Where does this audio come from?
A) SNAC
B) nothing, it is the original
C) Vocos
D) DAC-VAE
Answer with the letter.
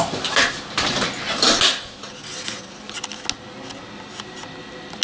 B